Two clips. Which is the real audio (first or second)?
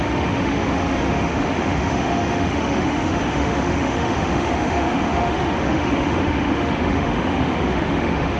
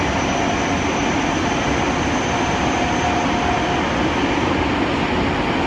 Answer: second